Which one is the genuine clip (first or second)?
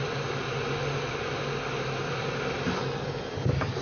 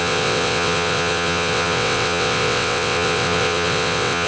first